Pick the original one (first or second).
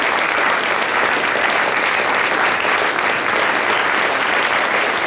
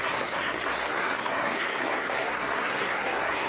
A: first